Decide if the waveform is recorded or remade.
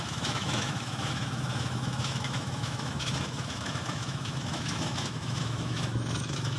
remade